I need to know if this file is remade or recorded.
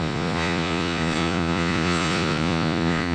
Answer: remade